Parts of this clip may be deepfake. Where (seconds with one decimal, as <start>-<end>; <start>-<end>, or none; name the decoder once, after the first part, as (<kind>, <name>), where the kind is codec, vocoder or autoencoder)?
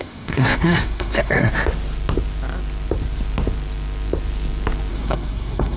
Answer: 0.0-1.4 (codec, SNAC); 4.9-5.8